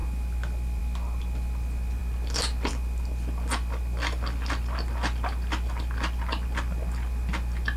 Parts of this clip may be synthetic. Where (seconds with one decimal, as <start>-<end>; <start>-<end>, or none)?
0.0-0.8